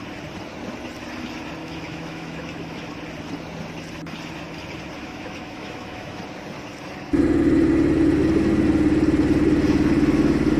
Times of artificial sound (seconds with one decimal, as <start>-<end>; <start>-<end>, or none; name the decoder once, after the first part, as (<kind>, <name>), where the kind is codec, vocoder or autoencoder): 1.6-2.9 (autoencoder, DAC-VAE); 5.0-6.2